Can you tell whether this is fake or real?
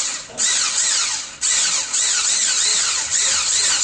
real